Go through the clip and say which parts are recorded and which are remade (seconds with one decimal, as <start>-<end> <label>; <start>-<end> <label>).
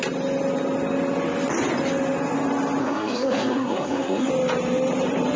0.0-2.8 recorded; 2.8-4.3 remade; 4.3-5.4 recorded